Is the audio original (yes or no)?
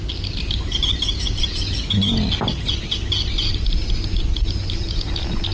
yes